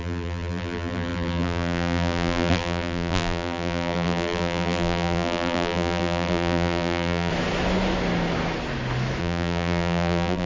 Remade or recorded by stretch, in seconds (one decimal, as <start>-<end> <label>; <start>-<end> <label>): 0.0-7.3 remade; 7.3-9.2 recorded; 9.2-10.5 remade